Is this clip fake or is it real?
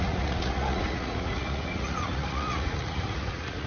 fake